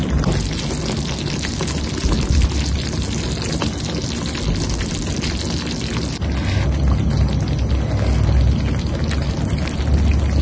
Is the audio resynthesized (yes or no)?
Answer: no